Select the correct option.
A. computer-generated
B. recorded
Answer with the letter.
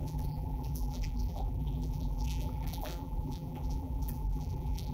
A